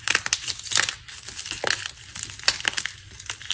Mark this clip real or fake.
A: real